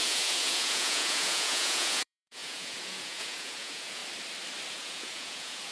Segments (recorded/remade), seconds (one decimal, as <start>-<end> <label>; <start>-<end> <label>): 0.0-4.0 remade; 4.0-4.7 recorded; 4.7-5.7 remade